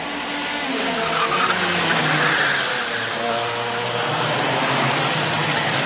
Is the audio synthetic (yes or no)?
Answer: no